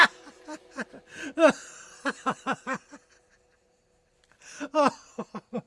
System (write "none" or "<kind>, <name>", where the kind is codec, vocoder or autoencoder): none